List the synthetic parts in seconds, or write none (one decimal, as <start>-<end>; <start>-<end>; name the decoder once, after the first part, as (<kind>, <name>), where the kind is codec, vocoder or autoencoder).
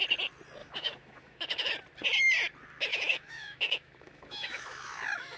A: 0.6-1.7 (autoencoder, DAC-VAE); 2.9-5.4